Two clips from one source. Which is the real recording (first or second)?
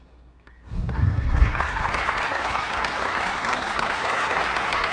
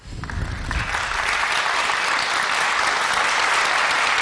second